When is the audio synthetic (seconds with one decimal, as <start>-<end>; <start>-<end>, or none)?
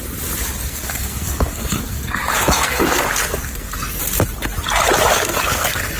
0.6-4.0; 5.1-6.0